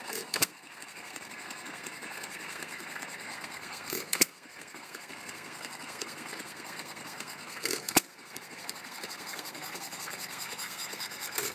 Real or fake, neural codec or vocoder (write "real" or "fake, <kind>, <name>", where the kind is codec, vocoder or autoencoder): fake, codec, SNAC